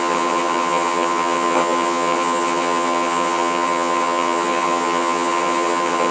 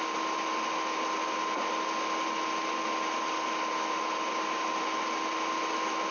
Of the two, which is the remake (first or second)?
first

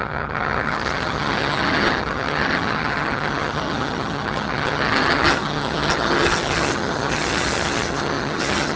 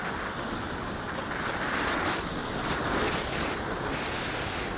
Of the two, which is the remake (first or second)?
first